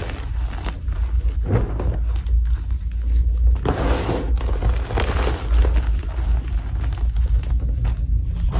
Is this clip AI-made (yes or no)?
no